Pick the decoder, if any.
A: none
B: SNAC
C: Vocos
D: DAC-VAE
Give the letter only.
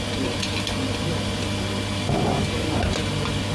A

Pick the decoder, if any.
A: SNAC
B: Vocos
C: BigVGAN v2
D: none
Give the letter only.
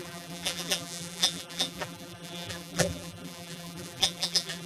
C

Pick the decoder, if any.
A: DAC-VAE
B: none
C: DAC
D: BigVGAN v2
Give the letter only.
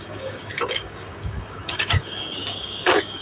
C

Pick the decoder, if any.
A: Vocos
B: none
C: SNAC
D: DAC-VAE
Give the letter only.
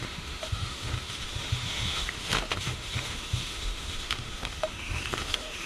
D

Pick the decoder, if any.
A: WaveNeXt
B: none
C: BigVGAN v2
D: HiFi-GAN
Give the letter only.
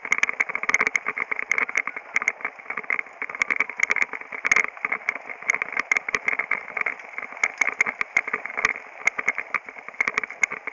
B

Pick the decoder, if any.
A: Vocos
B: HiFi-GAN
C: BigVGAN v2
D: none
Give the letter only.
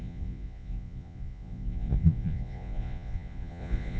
A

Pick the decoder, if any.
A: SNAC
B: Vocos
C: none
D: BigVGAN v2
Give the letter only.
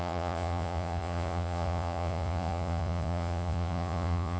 B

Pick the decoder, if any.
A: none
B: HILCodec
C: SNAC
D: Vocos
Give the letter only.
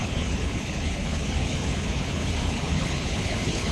B